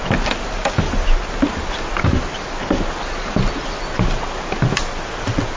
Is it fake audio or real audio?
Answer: real